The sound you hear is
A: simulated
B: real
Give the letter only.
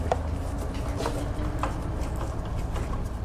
B